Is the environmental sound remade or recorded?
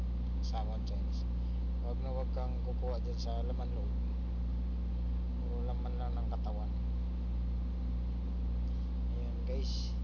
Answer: recorded